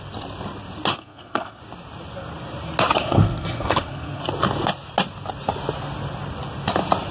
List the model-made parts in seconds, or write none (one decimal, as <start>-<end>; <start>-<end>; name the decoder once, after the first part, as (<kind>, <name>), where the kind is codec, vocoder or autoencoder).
0.9-1.6 (codec, SNAC); 3.0-4.2